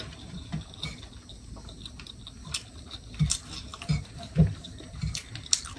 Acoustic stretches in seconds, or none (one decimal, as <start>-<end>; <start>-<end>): 0.0-5.8